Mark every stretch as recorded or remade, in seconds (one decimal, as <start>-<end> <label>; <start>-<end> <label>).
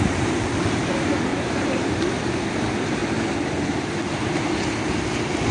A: 0.0-1.3 recorded; 1.3-2.1 remade; 2.1-5.5 recorded